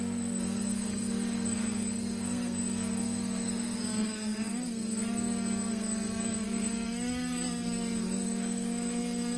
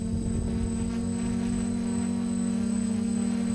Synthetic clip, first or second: first